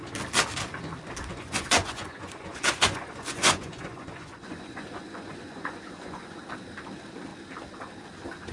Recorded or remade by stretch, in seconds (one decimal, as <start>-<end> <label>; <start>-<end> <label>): 0.0-1.3 recorded; 1.3-6.4 remade; 6.4-8.5 recorded